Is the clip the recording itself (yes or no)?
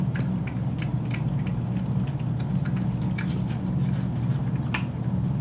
yes